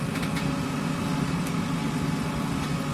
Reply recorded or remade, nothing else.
recorded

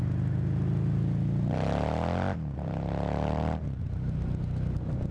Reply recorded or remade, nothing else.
recorded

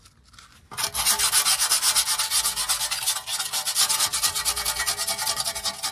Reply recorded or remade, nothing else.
recorded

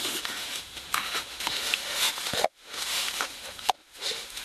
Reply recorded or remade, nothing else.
remade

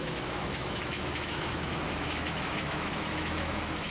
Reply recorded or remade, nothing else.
remade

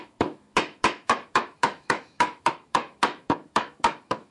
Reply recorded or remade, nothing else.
remade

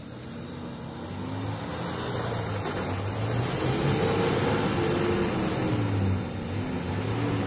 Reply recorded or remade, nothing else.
recorded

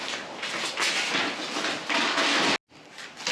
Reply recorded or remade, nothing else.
recorded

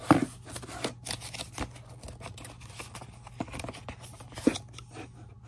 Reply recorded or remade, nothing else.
recorded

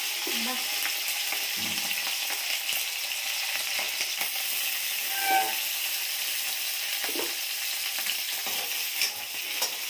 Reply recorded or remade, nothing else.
recorded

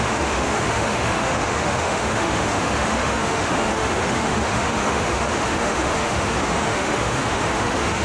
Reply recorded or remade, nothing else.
remade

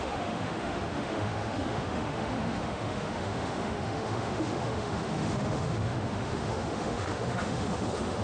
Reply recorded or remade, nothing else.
remade